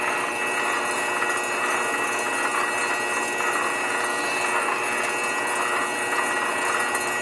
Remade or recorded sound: recorded